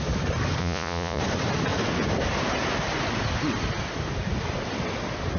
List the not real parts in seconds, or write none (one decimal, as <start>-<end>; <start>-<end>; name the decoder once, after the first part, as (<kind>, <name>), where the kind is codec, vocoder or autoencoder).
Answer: 0.6-1.2 (vocoder, Vocos)